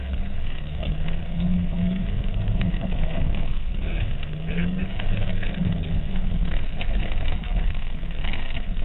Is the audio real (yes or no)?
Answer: no